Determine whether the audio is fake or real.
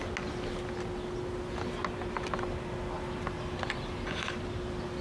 real